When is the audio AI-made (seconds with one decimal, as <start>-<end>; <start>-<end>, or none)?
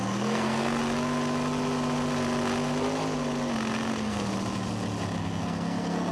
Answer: 0.0-0.8; 3.9-4.3; 5.2-6.1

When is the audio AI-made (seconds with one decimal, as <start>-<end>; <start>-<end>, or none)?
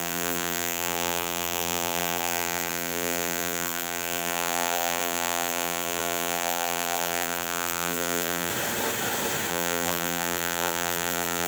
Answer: 0.0-8.5; 9.5-11.5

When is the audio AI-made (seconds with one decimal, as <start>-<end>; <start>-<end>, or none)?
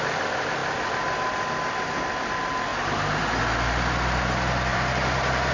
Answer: 2.7-3.4; 4.7-5.5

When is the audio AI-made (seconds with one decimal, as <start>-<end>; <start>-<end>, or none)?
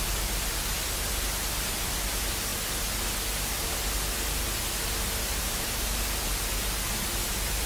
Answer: none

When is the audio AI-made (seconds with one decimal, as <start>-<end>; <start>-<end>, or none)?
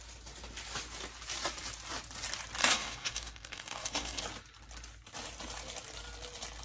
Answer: 2.6-4.2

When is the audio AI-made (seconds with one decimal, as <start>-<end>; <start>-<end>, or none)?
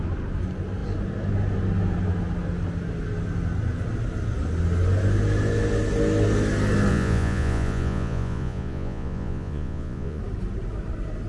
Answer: 6.9-10.2